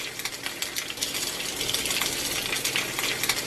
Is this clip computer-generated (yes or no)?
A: no